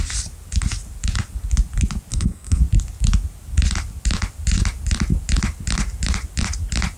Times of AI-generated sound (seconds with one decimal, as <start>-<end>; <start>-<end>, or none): 2.1-2.6